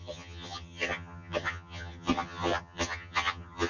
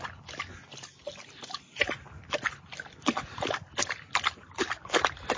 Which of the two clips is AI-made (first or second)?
first